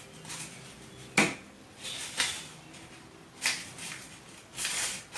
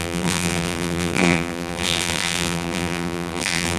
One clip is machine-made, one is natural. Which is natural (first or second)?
first